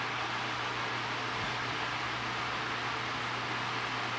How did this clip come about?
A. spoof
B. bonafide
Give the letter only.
B